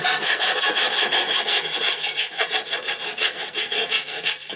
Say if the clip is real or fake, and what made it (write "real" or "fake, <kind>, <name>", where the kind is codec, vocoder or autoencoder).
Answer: fake, codec, SNAC